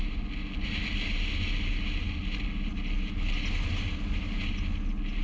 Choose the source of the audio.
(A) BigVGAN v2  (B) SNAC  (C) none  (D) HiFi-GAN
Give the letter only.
C